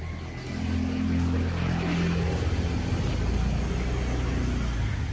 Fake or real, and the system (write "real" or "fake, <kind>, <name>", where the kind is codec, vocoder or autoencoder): real